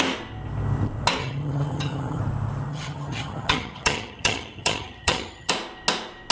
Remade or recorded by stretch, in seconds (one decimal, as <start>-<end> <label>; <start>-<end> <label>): 0.0-1.2 recorded; 1.2-2.2 remade; 2.2-2.7 recorded; 2.7-5.5 remade; 5.5-6.3 recorded